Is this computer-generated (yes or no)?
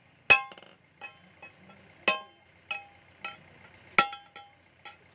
no